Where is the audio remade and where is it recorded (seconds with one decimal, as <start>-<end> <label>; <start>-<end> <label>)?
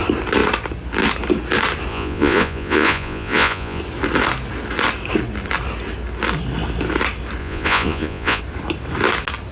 0.0-1.9 recorded; 1.9-3.8 remade; 3.8-7.4 recorded; 7.4-8.4 remade; 8.4-9.5 recorded